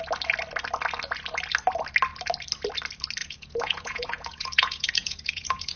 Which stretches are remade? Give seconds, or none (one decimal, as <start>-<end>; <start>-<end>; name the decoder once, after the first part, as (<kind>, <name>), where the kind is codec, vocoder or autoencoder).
3.2-5.8 (vocoder, Vocos)